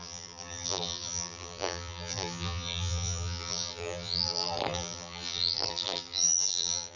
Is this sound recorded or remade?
remade